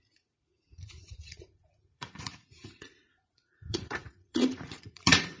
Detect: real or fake fake